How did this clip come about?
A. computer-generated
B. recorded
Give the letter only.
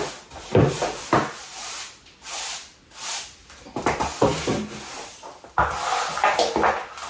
B